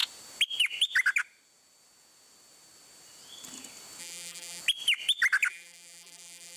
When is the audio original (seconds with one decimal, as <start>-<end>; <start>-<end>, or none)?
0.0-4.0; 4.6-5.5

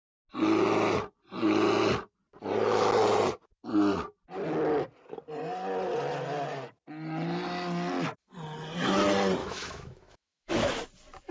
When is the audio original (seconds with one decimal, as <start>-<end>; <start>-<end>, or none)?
0.0-9.4; 10.7-11.3

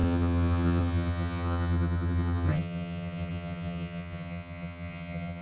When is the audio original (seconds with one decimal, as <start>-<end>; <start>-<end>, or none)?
none

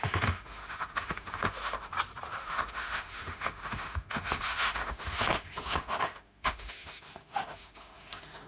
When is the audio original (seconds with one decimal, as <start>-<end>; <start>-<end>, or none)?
1.9-2.4

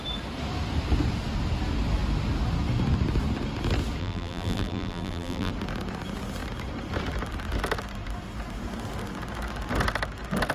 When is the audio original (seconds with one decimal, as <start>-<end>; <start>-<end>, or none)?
0.0-4.0; 5.5-10.5

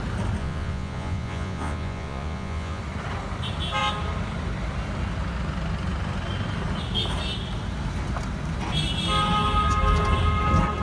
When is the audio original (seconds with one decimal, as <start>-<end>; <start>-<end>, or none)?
0.0-0.4; 2.8-10.8

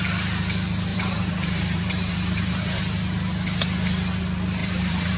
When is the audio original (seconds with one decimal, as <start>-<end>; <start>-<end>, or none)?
0.0-0.9; 2.8-4.6